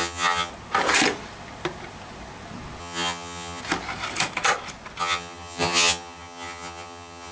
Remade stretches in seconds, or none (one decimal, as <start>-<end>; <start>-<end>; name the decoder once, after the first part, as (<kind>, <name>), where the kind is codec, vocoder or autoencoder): 0.0-0.5 (vocoder, HiFi-GAN); 2.8-3.6; 5.0-7.3